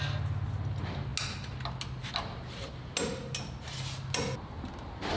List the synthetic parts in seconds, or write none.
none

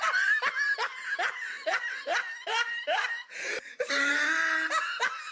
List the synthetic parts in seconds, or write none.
1.7-4.1 (vocoder, BigVGAN v2)

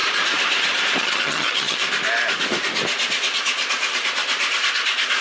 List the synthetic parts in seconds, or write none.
1.0-1.8 (vocoder, HiFi-GAN)

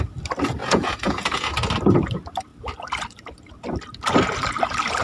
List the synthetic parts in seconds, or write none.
0.6-1.5 (vocoder, Vocos)

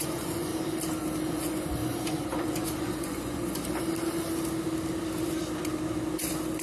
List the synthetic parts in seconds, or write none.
0.0-0.5 (vocoder, Vocos); 1.3-3.6

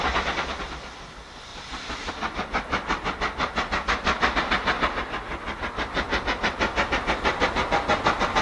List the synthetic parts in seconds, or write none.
1.5-2.1 (vocoder, BigVGAN v2)